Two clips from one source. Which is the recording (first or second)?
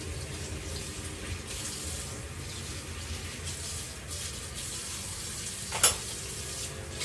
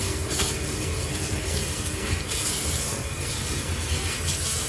first